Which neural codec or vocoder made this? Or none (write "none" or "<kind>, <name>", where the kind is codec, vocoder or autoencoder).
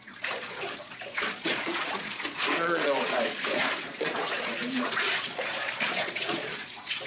vocoder, Vocos